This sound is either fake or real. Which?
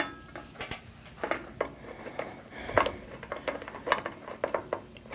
real